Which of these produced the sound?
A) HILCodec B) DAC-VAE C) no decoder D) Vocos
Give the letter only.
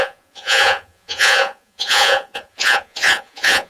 D